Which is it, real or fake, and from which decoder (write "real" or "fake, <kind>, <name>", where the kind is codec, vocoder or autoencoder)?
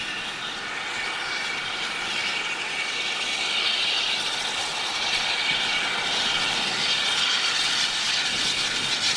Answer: real